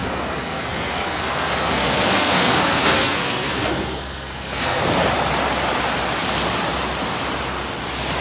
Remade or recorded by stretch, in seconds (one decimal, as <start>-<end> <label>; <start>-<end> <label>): 0.0-4.8 remade; 4.8-8.2 recorded